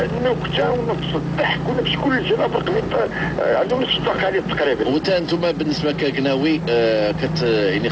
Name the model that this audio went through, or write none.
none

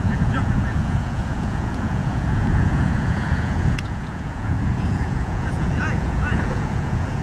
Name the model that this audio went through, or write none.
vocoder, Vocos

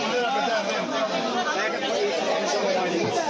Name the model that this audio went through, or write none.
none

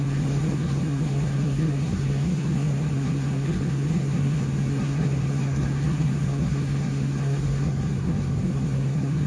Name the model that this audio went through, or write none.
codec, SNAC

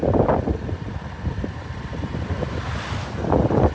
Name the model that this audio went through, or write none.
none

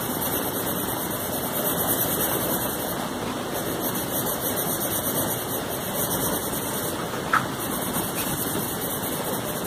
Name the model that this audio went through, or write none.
none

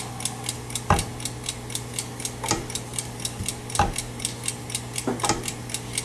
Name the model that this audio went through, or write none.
none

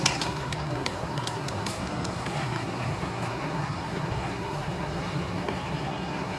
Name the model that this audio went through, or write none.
codec, SNAC